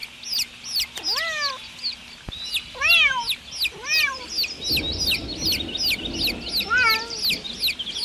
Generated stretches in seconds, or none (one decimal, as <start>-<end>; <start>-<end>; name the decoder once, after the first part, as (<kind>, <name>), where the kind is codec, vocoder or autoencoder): none